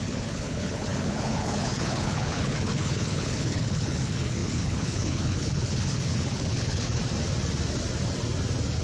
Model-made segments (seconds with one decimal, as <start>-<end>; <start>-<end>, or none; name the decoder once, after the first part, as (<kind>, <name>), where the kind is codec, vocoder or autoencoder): 0.0-7.0 (codec, HILCodec)